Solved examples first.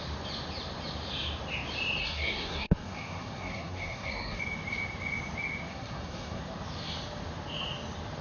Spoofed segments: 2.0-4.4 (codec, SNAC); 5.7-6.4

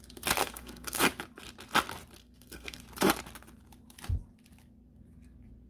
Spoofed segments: 0.4-1.0 (codec, SNAC); 2.2-2.8

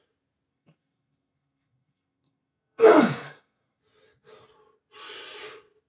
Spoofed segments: 0.5-3.8 (codec, SNAC)

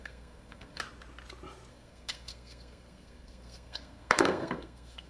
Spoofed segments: 0.0-0.8 (codec, SNAC); 1.7-5.1

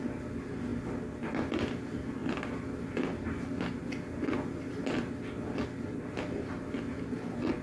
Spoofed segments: none

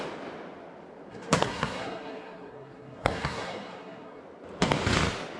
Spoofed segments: 1.1-4.2 (codec, SNAC)

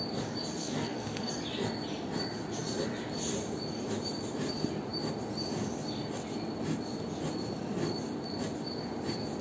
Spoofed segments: 0.6-1.3 (codec, SNAC)